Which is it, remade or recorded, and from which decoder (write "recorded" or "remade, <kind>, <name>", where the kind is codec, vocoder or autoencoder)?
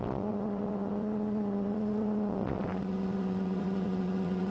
remade, vocoder, WaveNeXt